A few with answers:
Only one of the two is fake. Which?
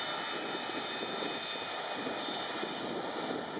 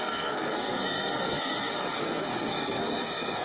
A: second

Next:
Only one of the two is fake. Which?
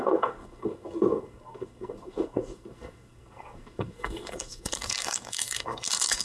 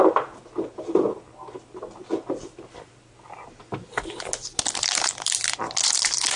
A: first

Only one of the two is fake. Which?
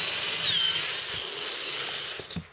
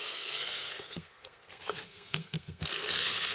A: second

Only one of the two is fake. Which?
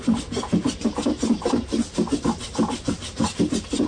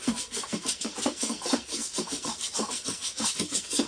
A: second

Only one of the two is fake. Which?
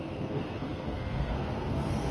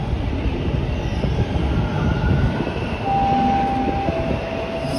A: first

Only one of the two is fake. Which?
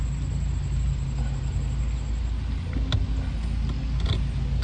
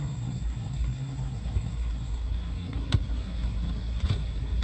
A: second